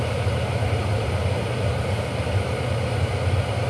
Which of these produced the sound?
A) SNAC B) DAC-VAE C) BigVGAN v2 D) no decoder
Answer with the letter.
C